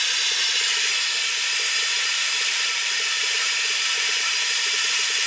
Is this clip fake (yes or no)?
yes